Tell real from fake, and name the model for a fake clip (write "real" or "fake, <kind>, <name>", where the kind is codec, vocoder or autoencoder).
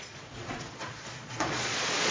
fake, vocoder, Vocos